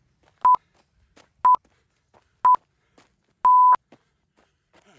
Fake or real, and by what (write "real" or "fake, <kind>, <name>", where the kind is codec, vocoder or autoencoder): real